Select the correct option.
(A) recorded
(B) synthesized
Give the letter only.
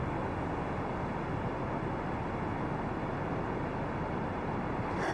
A